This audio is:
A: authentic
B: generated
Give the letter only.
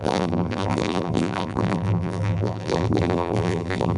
B